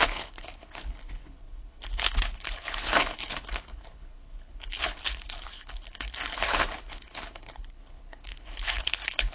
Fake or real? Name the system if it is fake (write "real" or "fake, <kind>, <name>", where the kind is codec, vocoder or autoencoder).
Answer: fake, codec, HILCodec